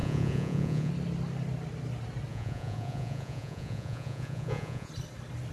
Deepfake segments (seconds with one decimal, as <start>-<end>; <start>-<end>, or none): 0.0-0.9; 2.3-4.9